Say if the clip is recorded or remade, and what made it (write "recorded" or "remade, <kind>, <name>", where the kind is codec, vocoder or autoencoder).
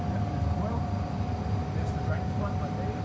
recorded